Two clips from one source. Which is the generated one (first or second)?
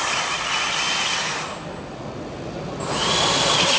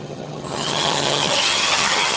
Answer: second